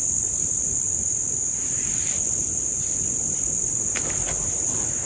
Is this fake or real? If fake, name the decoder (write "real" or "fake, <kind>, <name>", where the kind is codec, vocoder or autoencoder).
real